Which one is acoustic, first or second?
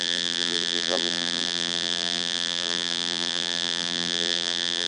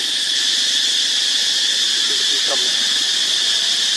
second